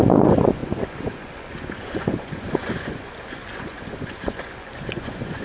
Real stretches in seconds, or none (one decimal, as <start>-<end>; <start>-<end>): none